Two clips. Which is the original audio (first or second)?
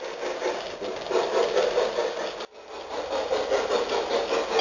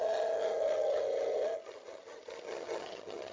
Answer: first